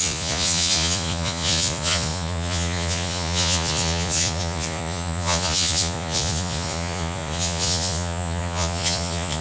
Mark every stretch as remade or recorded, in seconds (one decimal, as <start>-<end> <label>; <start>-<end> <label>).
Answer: 0.0-9.4 remade

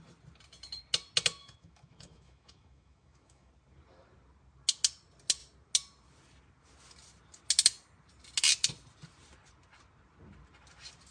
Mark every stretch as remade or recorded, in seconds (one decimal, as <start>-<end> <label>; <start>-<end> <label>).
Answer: 0.0-1.4 recorded; 1.4-3.5 remade; 3.5-11.1 recorded

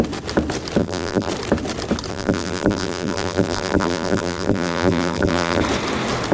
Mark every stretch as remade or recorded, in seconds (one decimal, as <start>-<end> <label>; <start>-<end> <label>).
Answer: 0.0-0.8 recorded; 0.8-1.3 remade; 1.3-2.1 recorded; 2.1-5.6 remade; 5.6-6.3 recorded

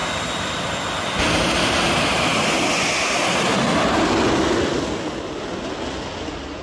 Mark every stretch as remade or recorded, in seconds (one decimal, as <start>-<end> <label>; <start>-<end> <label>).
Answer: 0.0-6.6 recorded

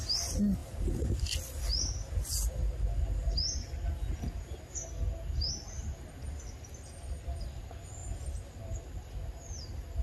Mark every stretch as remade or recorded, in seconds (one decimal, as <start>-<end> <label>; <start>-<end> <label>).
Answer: 0.0-10.0 recorded

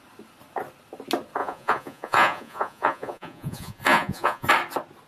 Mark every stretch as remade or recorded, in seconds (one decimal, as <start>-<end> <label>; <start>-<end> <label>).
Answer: 0.0-1.4 recorded; 1.4-4.5 remade; 4.5-5.1 recorded